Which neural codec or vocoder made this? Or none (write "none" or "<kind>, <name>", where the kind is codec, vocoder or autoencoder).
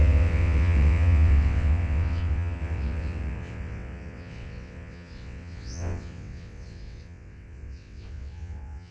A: vocoder, WaveNeXt